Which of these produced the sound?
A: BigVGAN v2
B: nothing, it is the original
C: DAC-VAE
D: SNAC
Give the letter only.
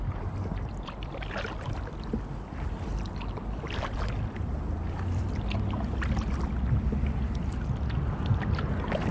B